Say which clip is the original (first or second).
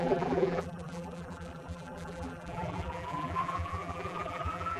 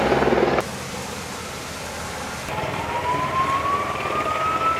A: second